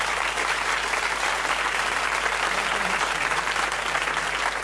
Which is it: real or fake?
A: real